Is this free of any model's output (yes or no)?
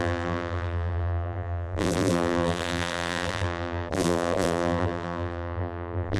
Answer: no